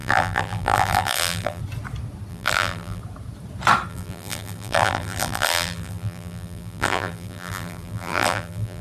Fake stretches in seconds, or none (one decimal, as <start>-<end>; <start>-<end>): 0.0-1.6; 2.3-3.0; 3.9-8.8